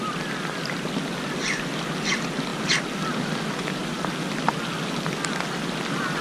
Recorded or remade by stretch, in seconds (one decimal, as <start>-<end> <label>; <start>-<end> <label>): 0.0-6.2 recorded